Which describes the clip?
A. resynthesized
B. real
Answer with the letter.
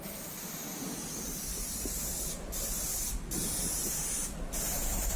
B